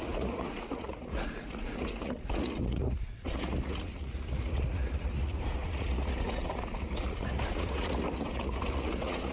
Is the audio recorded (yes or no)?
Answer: no